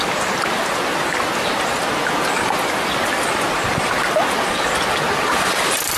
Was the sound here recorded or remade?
recorded